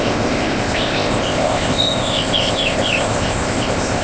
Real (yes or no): no